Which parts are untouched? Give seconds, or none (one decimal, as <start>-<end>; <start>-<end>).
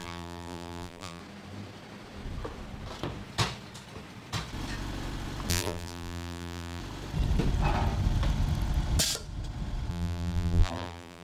1.2-5.5; 6.8-9.9